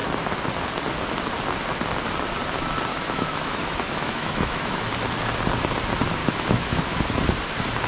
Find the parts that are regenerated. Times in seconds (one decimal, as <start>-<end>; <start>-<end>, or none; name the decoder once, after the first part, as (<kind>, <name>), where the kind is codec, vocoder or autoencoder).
2.9-4.9 (autoencoder, DAC-VAE); 6.2-6.8